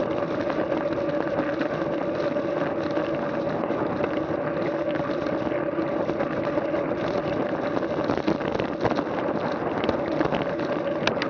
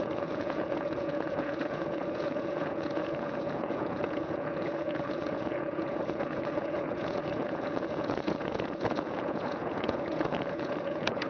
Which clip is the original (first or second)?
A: first